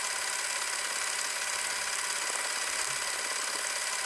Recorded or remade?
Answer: recorded